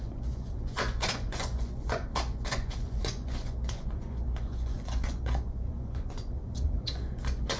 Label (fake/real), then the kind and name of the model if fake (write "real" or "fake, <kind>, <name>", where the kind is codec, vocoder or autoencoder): fake, vocoder, Vocos